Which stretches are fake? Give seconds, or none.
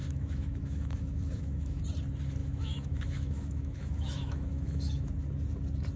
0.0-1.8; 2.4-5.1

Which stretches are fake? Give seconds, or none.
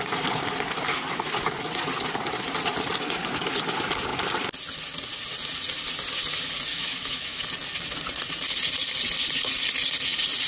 6.7-7.4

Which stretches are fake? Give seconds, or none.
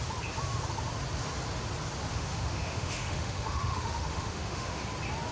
2.1-4.8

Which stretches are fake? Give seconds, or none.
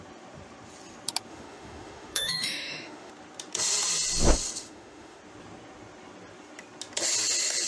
1.3-3.1; 4.6-5.2